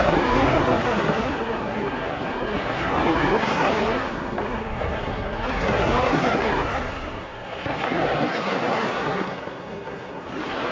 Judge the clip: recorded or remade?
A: remade